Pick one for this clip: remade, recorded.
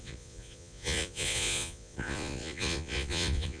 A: remade